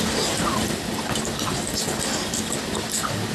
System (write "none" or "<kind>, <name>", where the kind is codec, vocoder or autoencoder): none